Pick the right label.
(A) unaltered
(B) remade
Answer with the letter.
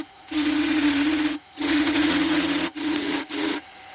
B